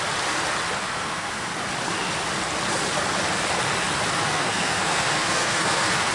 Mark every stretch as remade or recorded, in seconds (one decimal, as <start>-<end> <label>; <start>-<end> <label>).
0.0-0.8 recorded; 0.8-1.5 remade; 1.5-4.3 recorded; 4.3-6.1 remade